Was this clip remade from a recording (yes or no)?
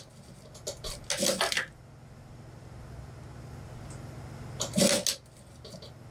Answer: no